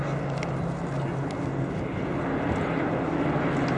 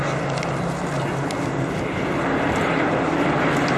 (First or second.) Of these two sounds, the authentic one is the first